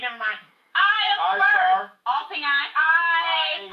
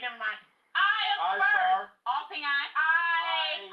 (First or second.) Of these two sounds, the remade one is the first